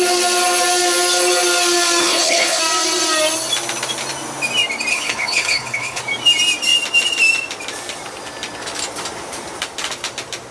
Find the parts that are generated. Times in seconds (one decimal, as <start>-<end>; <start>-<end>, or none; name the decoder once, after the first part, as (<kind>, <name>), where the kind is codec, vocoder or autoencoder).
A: 2.0-2.6 (codec, HILCodec); 4.9-6.0